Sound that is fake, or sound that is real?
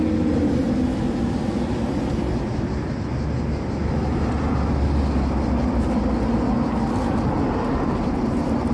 real